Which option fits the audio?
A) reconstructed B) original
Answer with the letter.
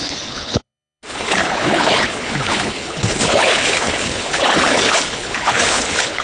A